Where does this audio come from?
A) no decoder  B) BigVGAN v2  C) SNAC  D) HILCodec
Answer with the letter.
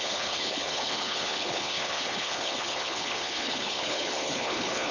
D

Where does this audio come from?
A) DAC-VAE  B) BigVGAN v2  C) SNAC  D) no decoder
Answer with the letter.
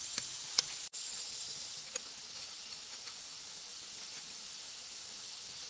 D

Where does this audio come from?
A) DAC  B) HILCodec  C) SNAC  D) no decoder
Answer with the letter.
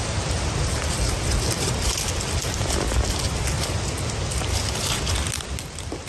D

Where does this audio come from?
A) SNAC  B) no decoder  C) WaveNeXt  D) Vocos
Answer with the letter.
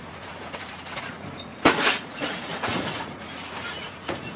D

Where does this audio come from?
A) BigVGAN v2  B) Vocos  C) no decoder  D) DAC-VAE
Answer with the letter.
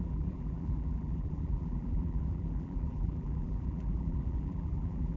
A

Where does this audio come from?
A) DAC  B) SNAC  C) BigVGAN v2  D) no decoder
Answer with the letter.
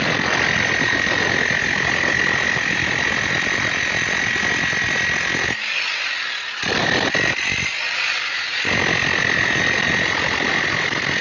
C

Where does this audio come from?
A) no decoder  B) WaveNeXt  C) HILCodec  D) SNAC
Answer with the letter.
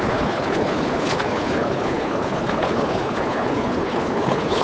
C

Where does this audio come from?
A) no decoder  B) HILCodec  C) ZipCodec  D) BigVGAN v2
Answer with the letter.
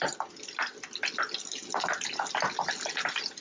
A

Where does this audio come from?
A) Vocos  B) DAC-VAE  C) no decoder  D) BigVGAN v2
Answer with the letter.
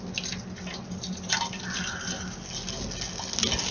C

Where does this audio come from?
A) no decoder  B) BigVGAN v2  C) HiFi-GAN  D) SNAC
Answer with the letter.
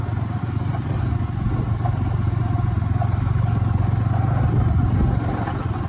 A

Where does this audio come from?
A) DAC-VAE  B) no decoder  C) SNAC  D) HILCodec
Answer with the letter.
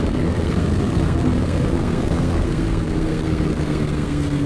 C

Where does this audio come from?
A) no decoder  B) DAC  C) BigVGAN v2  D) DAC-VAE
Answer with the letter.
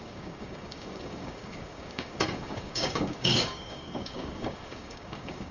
B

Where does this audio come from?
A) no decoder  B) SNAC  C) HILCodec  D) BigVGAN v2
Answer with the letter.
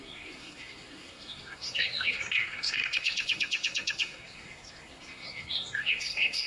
B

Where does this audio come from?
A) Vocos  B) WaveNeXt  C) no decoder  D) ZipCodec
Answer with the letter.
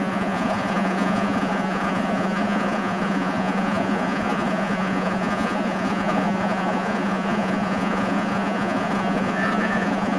A